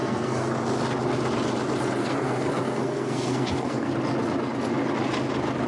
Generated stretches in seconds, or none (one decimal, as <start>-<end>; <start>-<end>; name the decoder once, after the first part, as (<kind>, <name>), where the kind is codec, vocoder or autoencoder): 0.0-0.5 (codec, SNAC); 2.0-3.9